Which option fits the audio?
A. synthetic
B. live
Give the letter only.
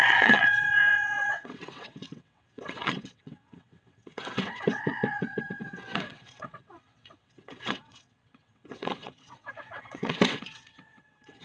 A